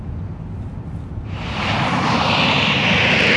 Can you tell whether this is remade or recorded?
recorded